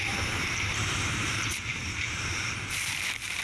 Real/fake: fake